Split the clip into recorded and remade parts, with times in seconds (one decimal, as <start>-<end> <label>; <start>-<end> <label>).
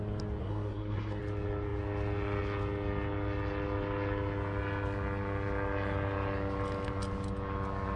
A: 0.0-0.4 recorded; 0.4-1.2 remade; 1.2-8.0 recorded